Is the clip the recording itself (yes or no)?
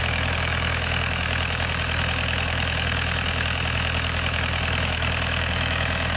no